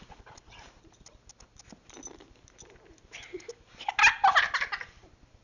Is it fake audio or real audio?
real